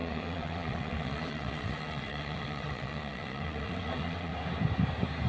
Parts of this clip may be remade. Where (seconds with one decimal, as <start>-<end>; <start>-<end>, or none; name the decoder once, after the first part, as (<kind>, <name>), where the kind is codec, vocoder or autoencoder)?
0.0-4.3 (vocoder, WaveNeXt)